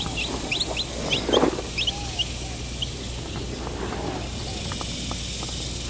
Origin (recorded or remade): recorded